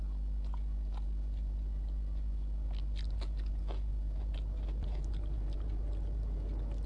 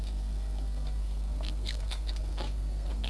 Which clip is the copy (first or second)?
second